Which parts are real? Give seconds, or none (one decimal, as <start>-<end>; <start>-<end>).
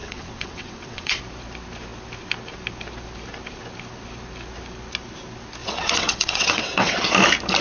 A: 1.2-5.6; 7.0-7.6